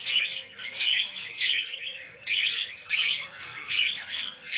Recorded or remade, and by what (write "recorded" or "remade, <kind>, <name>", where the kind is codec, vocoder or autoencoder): remade, codec, SNAC